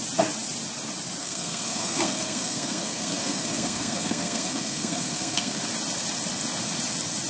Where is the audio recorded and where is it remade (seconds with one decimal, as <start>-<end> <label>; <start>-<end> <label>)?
0.0-1.2 recorded; 1.2-5.6 remade; 5.6-7.3 recorded